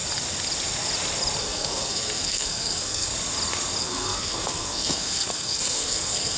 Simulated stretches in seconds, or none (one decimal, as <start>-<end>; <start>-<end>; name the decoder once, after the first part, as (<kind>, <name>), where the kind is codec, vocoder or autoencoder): 1.4-3.1 (codec, SNAC); 3.8-6.4